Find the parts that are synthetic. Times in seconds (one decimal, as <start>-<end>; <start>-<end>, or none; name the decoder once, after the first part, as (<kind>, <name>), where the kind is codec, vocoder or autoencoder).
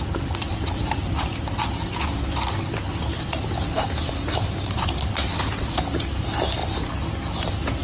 0.5-1.3 (vocoder, BigVGAN v2)